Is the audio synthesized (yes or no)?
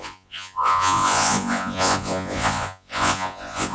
yes